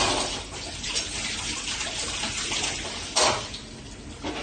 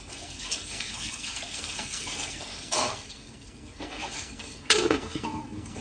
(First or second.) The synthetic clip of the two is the second